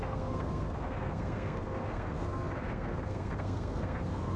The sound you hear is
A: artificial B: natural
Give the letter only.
A